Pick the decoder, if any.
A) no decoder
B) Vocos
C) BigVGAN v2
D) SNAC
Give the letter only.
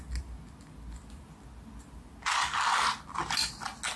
A